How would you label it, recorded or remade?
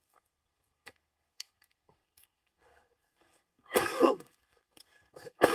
remade